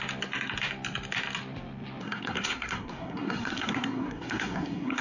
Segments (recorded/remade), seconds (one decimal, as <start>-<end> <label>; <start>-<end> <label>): 0.0-2.0 recorded; 2.0-5.0 remade